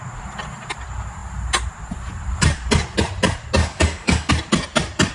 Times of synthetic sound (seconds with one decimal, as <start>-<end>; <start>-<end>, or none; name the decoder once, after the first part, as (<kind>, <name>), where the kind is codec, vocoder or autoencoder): 3.6-4.3 (codec, DAC)